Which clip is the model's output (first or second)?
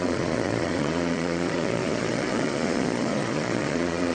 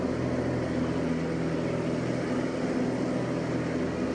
first